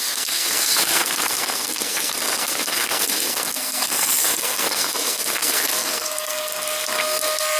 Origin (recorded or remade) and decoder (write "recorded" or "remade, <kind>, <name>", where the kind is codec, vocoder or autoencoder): remade, codec, SNAC